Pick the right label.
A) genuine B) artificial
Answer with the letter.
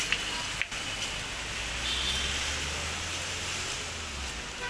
A